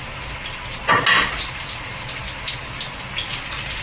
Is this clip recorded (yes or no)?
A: yes